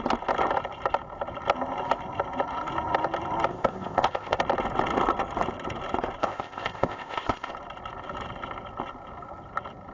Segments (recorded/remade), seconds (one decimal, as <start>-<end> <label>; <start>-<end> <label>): 0.0-3.5 recorded; 3.5-4.4 remade; 4.4-6.2 recorded; 6.2-7.5 remade; 7.5-9.9 recorded